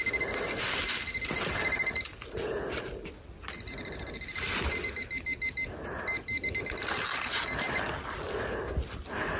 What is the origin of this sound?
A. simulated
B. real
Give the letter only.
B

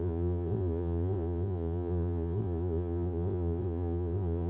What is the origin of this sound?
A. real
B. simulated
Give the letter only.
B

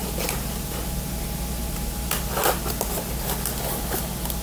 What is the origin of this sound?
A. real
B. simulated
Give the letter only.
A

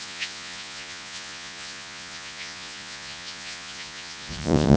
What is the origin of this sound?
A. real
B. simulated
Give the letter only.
B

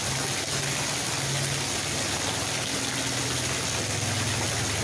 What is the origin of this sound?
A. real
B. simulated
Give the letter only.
A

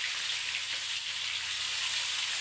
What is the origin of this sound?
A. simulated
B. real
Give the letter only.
B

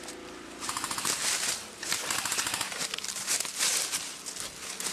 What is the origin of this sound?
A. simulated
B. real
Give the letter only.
B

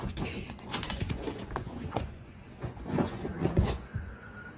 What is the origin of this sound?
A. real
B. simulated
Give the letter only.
B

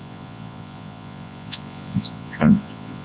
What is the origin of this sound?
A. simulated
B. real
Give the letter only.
A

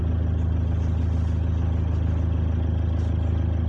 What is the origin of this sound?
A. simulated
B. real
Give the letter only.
B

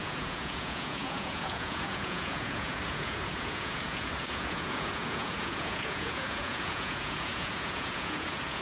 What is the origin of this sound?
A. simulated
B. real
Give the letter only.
A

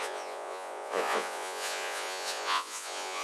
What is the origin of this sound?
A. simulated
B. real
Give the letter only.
A